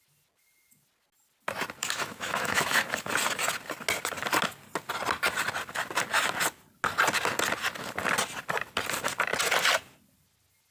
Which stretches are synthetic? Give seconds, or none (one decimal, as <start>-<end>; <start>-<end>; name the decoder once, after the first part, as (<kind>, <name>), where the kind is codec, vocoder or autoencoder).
1.8-3.1 (autoencoder, DAC-VAE)